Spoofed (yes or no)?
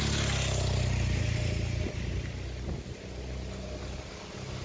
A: no